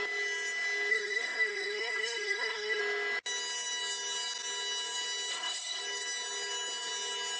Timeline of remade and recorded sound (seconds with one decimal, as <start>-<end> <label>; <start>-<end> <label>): 0.0-0.9 recorded; 0.9-2.8 remade; 2.8-5.3 recorded; 5.3-5.8 remade; 5.8-7.4 recorded